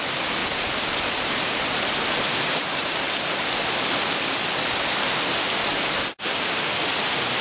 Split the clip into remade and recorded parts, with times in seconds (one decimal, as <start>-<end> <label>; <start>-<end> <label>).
0.0-0.4 recorded; 0.4-4.8 remade; 4.8-5.7 recorded; 5.7-6.8 remade; 6.8-7.4 recorded